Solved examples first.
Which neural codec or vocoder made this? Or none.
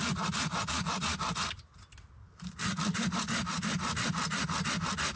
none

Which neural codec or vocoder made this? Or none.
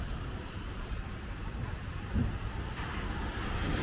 vocoder, BigVGAN v2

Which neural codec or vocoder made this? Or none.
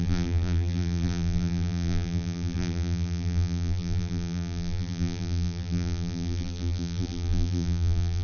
vocoder, BigVGAN v2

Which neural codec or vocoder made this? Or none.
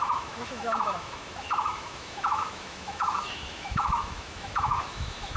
autoencoder, DAC-VAE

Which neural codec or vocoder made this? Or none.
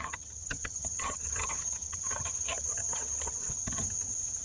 vocoder, HiFi-GAN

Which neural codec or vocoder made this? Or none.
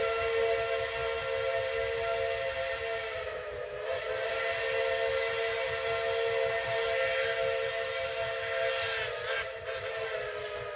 none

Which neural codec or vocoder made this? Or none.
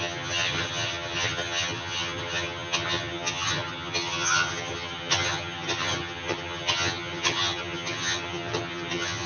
vocoder, HiFi-GAN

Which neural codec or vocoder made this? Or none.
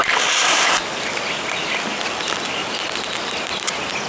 none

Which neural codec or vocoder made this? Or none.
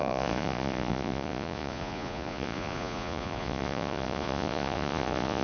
vocoder, Vocos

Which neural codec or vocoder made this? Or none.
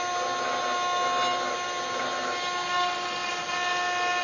none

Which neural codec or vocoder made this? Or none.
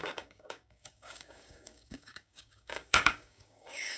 codec, DAC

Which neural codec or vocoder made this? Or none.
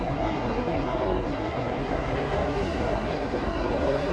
codec, SNAC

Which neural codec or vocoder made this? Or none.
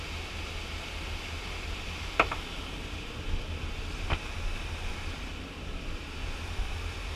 none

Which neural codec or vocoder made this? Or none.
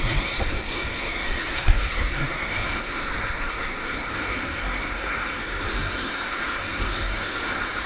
codec, SNAC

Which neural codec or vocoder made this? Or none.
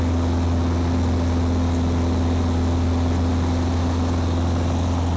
none